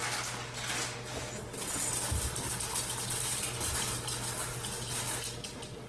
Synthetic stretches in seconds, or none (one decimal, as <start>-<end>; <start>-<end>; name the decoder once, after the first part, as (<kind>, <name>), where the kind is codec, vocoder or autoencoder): none